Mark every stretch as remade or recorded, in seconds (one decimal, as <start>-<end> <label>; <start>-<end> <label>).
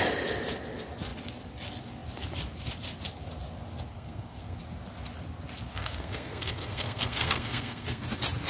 0.0-3.9 recorded; 3.9-4.6 remade; 4.6-5.7 recorded; 5.7-8.0 remade; 8.0-8.5 recorded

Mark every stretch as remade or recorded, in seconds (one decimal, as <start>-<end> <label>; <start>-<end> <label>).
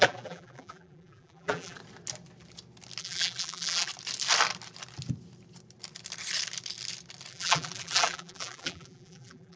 0.0-1.8 remade; 1.8-3.0 recorded; 3.0-3.9 remade; 3.9-7.3 recorded; 7.3-9.6 remade